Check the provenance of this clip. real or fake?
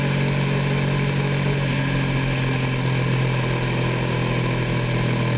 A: real